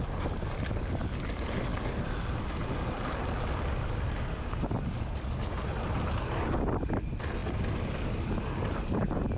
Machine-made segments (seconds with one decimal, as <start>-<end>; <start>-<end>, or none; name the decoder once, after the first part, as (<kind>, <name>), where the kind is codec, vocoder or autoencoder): none